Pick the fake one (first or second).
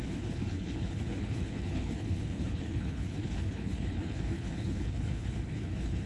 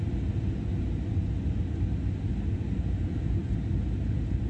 first